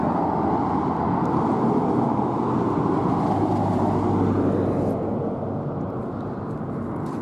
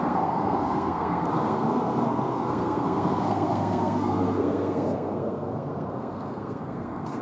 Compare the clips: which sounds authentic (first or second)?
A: first